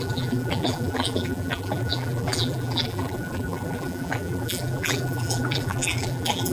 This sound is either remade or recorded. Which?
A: remade